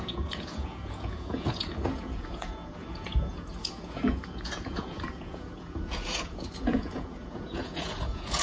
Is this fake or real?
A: fake